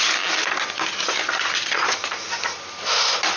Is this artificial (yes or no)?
no